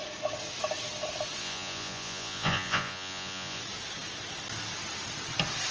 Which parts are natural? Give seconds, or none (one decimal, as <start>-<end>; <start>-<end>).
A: 0.0-1.4; 3.6-5.7